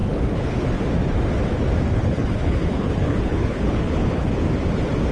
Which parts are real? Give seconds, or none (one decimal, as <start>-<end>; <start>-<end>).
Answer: 0.7-2.0; 4.3-5.1